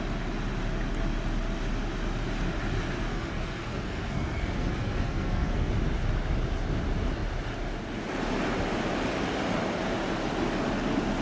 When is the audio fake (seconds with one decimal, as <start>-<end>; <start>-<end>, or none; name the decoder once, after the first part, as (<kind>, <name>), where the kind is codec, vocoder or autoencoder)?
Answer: 3.1-5.7 (codec, SNAC)